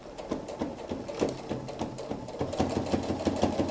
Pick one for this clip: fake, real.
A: real